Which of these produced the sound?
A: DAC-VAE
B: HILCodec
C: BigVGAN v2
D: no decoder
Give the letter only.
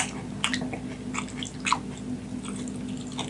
D